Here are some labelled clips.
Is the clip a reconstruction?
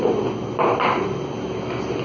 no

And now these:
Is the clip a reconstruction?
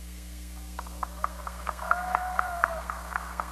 yes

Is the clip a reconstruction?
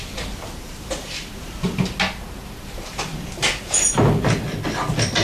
no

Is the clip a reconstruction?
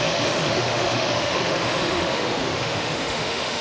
yes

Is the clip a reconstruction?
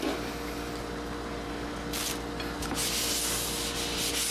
no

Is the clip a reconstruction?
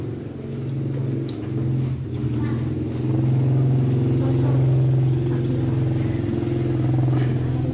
no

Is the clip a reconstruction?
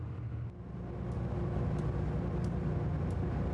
no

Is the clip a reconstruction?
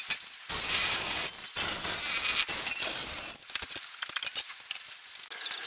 no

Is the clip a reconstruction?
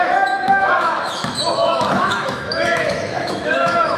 yes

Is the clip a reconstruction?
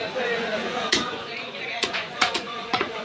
yes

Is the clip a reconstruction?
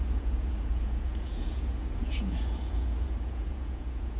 yes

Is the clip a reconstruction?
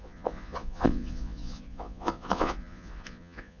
yes